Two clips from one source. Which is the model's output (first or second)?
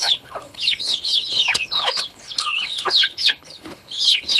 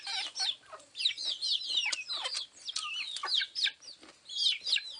first